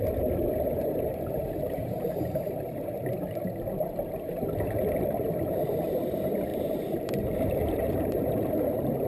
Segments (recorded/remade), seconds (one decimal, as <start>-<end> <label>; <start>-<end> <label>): 0.0-1.1 recorded; 1.1-3.1 remade; 3.1-6.5 recorded; 6.5-8.5 remade; 8.5-9.1 recorded